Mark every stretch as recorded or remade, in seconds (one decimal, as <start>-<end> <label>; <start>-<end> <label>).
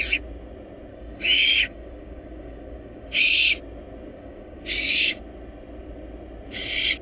0.0-0.9 recorded; 0.9-3.2 remade; 3.2-4.1 recorded; 4.1-5.2 remade; 5.2-7.0 recorded